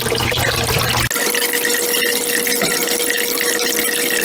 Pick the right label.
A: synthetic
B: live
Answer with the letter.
B